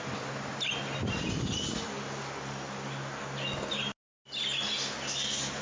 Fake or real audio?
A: real